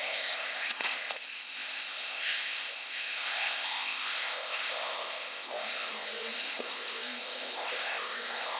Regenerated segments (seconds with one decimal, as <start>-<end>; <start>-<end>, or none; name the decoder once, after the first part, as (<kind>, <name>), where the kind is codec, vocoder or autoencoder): 0.0-8.6 (codec, ZipCodec)